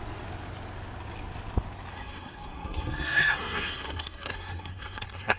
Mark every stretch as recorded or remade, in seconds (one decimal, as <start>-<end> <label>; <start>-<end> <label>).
0.0-1.9 recorded; 1.9-5.4 remade